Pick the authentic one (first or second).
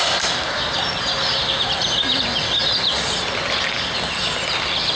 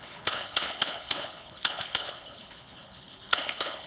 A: first